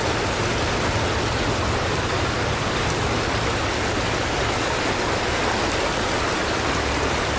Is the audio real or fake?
real